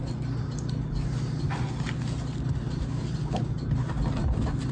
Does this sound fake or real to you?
real